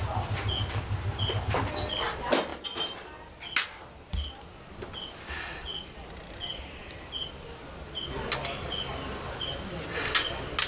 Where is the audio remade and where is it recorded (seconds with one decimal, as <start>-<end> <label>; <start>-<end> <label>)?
0.0-10.7 recorded